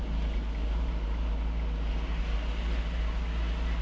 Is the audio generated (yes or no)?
no